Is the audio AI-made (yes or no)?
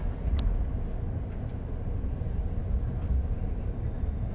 no